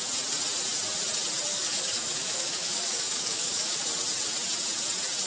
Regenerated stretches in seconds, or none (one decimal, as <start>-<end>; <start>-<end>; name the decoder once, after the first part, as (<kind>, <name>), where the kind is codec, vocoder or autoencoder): 1.5-3.8 (codec, DAC)